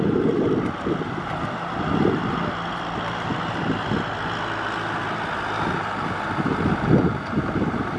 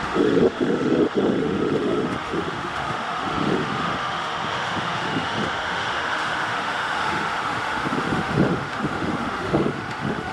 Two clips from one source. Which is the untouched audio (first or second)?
first